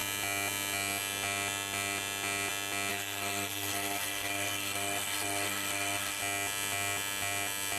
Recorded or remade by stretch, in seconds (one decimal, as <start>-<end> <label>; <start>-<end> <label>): 0.0-2.9 recorded; 2.9-6.2 remade; 6.2-7.8 recorded